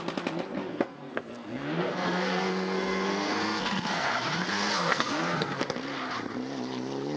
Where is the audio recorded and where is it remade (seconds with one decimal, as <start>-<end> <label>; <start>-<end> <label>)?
0.0-0.7 recorded; 0.7-4.1 remade; 4.1-4.5 recorded; 4.5-5.6 remade; 5.6-7.2 recorded